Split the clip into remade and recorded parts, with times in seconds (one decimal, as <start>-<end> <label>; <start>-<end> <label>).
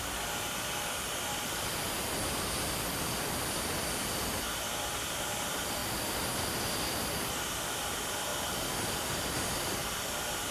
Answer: 0.0-10.5 recorded